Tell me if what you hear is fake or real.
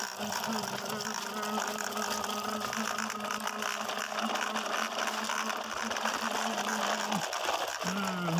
real